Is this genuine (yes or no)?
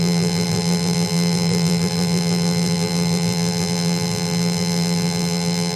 no